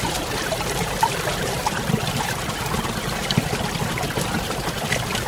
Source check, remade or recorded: recorded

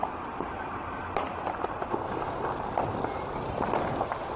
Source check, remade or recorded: recorded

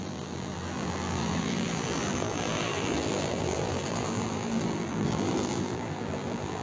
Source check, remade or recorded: remade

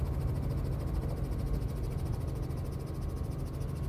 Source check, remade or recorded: recorded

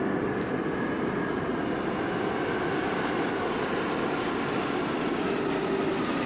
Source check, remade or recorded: recorded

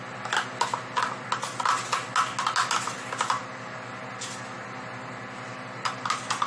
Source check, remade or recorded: recorded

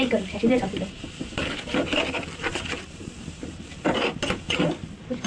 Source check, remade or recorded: remade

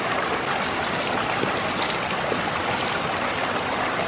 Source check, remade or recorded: recorded